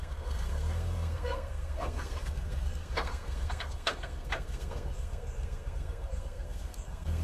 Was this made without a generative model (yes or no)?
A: no